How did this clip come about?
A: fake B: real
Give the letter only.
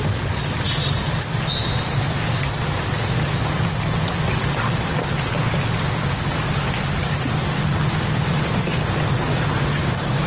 B